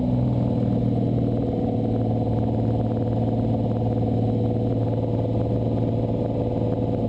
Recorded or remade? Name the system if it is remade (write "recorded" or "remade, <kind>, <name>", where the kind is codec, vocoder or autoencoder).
recorded